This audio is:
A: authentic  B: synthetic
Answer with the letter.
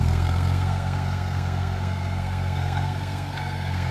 B